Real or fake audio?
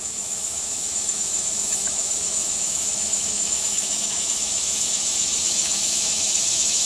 fake